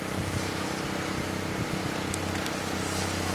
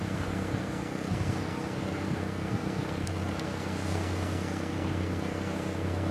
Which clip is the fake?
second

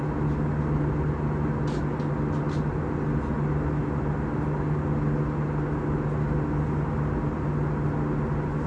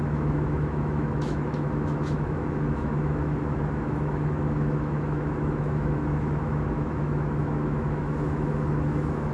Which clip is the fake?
second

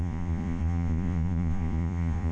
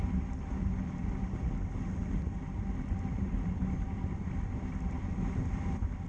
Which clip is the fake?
first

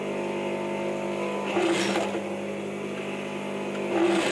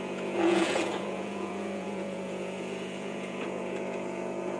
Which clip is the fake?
second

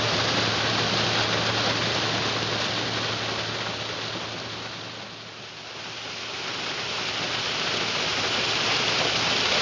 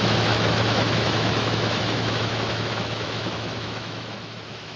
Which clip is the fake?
second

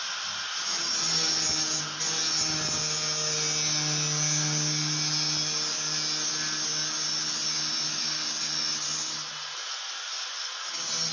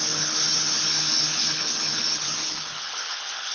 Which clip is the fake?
second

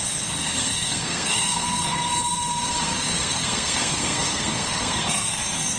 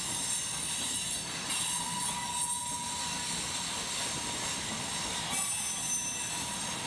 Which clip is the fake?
first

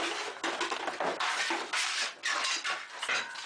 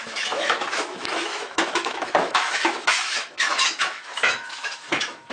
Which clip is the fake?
second